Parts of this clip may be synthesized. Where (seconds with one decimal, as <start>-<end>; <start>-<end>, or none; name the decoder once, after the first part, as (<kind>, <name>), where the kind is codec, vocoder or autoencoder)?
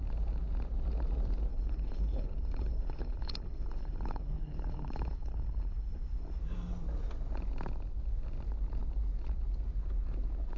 1.5-6.4 (codec, HILCodec)